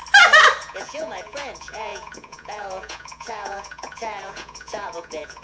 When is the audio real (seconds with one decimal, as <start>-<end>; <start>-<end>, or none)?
0.0-0.6